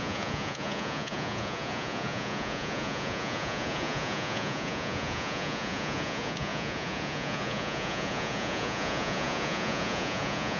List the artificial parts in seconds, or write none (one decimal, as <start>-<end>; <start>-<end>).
0.0-10.6